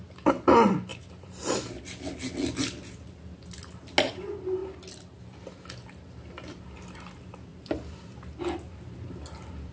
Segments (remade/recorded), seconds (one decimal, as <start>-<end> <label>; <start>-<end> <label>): 0.0-0.9 recorded; 0.9-1.5 remade; 1.5-7.5 recorded; 7.5-8.1 remade; 8.1-9.7 recorded